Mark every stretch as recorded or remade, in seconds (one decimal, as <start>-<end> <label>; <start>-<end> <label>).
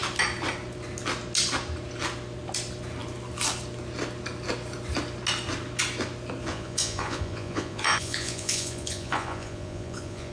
0.0-6.5 recorded; 6.5-10.3 remade